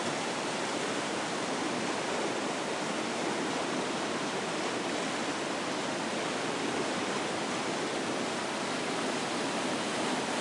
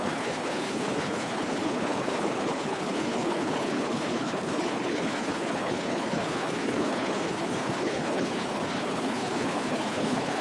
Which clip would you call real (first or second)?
first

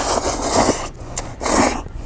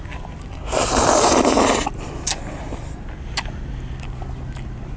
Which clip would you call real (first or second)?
second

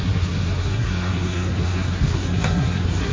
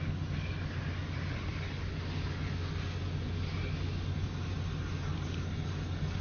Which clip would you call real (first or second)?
second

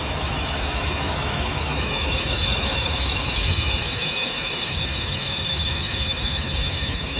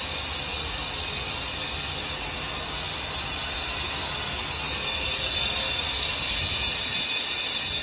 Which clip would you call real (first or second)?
second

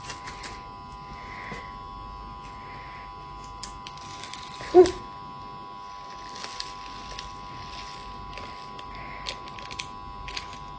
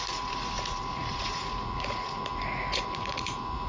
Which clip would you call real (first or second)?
first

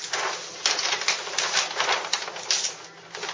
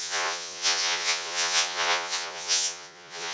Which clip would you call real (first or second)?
first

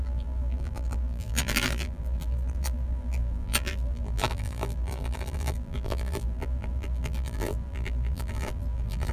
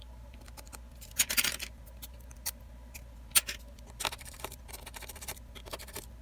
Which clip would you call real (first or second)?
second